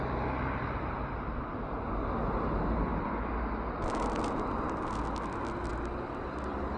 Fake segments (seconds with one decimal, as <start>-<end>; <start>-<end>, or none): none

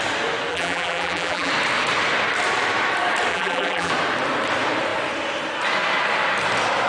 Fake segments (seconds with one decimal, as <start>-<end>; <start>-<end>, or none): 0.5-1.5; 3.3-3.9

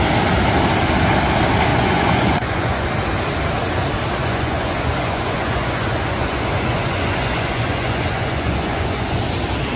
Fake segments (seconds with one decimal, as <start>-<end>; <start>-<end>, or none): 1.7-2.9; 4.2-9.2